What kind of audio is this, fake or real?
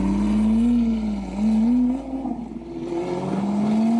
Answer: real